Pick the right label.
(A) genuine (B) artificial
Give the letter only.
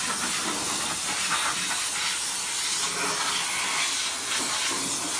A